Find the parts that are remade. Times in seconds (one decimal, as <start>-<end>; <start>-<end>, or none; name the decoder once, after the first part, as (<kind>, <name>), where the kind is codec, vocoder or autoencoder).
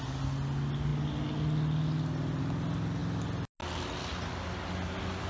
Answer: none